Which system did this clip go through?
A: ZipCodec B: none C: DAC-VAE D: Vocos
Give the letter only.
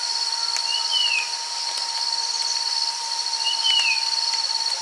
B